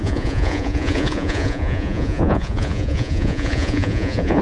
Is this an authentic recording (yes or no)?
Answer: no